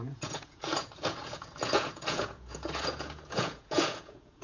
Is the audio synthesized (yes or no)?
yes